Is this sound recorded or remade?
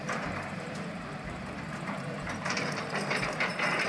remade